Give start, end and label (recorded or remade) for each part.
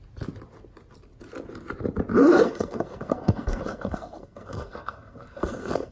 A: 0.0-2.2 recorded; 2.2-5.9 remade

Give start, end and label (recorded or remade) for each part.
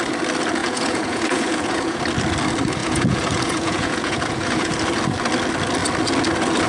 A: 0.0-0.6 recorded; 0.6-2.0 remade; 2.0-2.8 recorded; 2.8-4.7 remade; 4.7-6.7 recorded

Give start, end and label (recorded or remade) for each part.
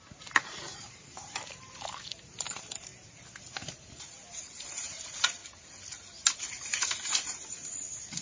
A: 0.0-2.9 remade; 2.9-3.7 recorded; 3.7-5.4 remade; 5.4-6.5 recorded; 6.5-8.2 remade